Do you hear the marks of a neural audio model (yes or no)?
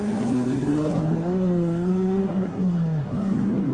yes